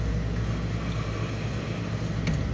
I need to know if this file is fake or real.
real